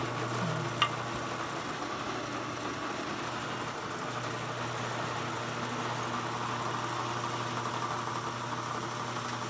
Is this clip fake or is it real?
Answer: real